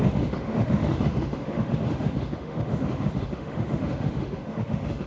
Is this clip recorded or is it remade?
remade